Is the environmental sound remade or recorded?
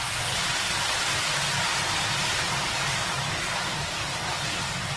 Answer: recorded